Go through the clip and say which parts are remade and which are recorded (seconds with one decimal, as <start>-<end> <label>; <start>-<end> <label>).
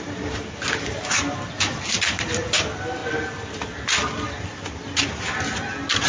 0.0-6.1 recorded